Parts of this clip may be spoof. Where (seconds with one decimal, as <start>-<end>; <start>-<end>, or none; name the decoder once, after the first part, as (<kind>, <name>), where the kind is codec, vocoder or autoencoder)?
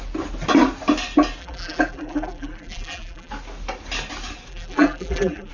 1.4-3.3 (vocoder, BigVGAN v2); 4.5-5.5